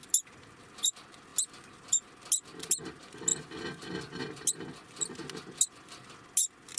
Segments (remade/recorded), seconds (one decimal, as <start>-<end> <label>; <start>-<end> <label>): 0.0-6.8 recorded